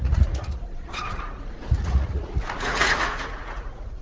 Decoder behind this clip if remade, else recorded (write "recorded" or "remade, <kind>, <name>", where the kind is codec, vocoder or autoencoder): remade, vocoder, Vocos